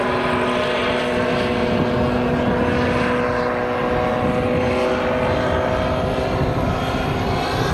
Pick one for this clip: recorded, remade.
recorded